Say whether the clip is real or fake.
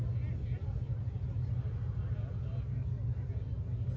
real